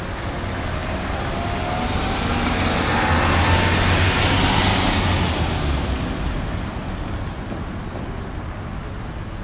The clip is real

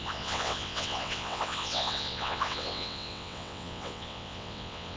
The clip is fake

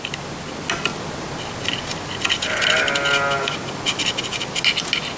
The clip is real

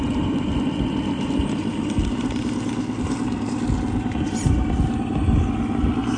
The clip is real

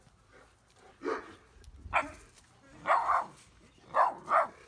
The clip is real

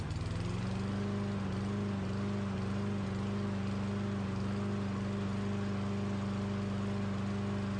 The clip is real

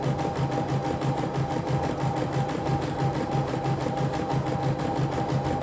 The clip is real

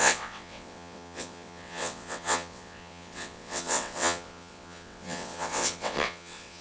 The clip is fake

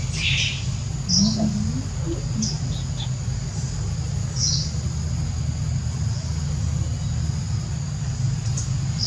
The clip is real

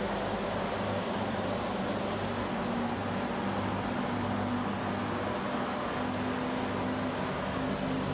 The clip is real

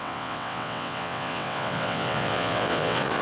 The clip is fake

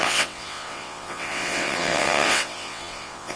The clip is fake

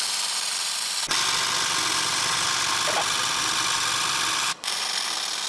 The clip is real